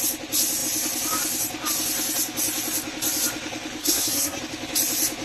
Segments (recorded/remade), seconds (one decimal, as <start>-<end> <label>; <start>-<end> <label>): 0.0-3.8 recorded; 3.8-4.4 remade; 4.4-5.2 recorded